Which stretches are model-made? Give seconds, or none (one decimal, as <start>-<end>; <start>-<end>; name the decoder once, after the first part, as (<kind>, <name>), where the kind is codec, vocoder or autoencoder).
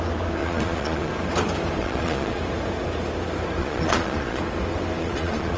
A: 0.4-1.1 (vocoder, Vocos); 1.8-2.4; 3.6-4.4; 5.0-5.6